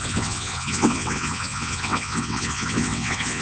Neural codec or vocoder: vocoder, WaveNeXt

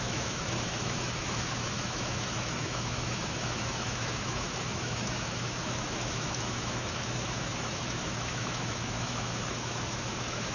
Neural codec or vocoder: autoencoder, DAC-VAE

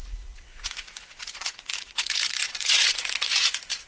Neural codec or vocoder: vocoder, Vocos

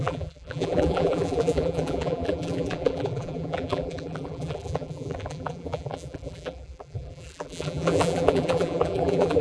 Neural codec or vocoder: vocoder, BigVGAN v2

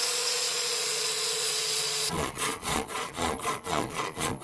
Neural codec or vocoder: vocoder, Vocos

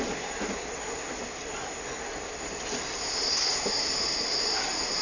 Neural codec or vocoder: none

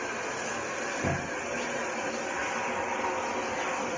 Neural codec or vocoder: none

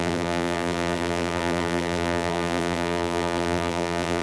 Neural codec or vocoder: vocoder, BigVGAN v2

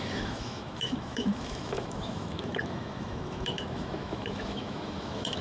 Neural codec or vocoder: autoencoder, DAC-VAE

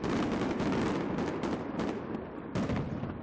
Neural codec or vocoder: none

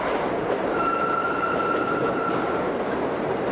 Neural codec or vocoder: vocoder, BigVGAN v2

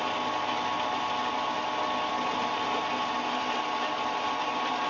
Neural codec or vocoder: none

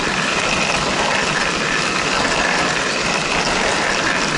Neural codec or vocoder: none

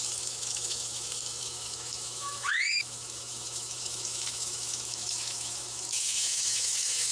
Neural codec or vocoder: autoencoder, DAC-VAE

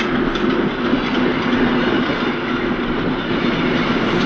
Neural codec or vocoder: none